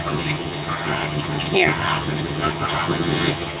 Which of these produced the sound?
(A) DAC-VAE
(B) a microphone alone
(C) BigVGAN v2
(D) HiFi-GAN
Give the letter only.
D